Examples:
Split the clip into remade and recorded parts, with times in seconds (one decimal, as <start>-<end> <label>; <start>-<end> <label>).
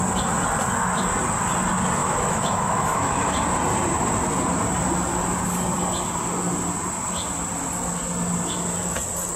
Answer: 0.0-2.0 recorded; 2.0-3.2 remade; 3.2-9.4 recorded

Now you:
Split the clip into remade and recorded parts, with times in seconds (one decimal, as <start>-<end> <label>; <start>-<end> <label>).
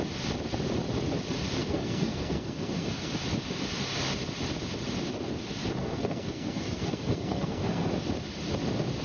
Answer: 0.0-1.6 recorded; 1.6-3.1 remade; 3.1-5.8 recorded; 5.8-7.9 remade; 7.9-9.0 recorded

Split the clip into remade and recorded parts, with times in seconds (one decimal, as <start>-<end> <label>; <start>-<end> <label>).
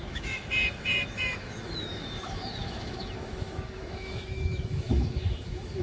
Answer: 0.0-5.8 remade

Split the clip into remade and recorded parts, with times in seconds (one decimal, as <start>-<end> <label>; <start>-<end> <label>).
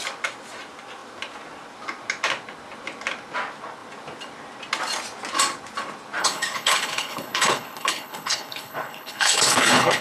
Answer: 0.0-6.2 recorded; 6.2-10.0 remade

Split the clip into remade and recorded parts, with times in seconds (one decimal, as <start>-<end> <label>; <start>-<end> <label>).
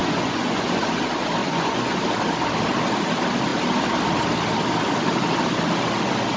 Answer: 0.0-0.8 remade; 0.8-1.4 recorded; 1.4-2.0 remade; 2.0-6.4 recorded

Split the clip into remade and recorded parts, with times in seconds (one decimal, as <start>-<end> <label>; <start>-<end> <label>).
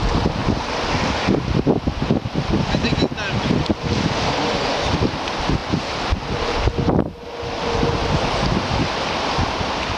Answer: 0.0-10.0 recorded